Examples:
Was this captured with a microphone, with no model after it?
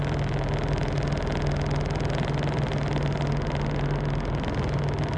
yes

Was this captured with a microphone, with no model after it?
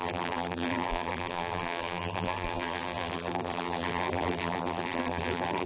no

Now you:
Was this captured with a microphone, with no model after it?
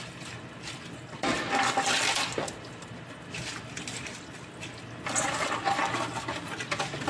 yes